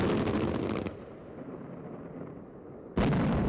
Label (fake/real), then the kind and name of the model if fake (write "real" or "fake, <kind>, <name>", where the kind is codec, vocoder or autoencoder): real